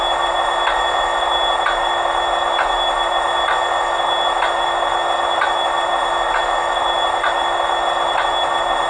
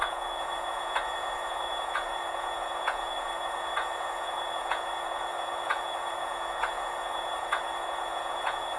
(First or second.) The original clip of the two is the first